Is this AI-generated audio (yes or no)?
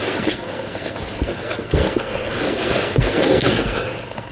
yes